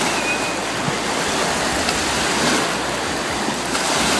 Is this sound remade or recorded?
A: recorded